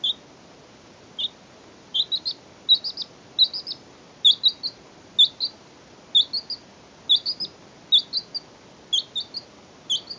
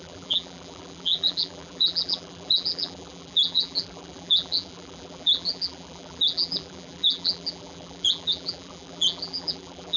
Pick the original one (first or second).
first